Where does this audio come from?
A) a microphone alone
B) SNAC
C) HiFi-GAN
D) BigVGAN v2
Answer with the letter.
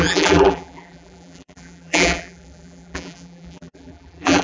D